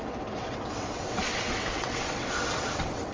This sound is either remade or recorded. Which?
remade